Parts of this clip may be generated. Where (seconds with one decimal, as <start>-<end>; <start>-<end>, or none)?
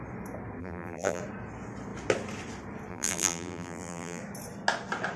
0.6-1.2; 2.9-4.2